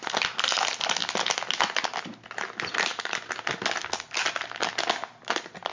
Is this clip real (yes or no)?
yes